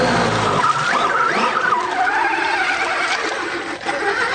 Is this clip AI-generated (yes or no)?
no